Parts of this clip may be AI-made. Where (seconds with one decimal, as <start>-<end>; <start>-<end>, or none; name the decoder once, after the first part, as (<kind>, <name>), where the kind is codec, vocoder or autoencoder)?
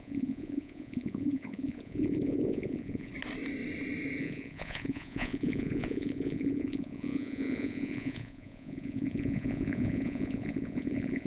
0.0-3.1 (vocoder, Vocos); 4.2-11.3